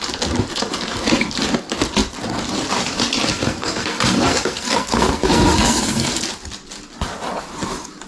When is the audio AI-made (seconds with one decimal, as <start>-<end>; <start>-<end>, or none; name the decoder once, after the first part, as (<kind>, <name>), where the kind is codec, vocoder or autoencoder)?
3.3-6.2 (codec, SNAC)